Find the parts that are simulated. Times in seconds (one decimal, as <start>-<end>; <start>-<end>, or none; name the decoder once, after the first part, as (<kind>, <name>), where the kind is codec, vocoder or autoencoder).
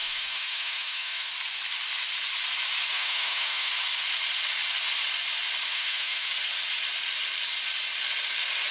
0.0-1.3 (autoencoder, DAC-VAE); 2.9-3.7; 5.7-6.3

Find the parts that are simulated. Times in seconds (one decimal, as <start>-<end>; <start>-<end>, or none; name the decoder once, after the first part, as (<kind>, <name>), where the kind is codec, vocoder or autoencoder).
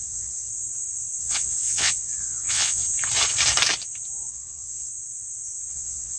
0.0-0.5 (vocoder, WaveNeXt); 1.2-2.8; 4.3-4.9; 5.7-6.2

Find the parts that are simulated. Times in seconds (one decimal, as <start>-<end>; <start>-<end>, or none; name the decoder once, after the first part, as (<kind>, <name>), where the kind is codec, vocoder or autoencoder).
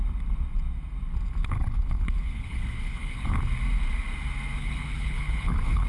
1.4-3.4 (codec, HILCodec); 4.6-5.9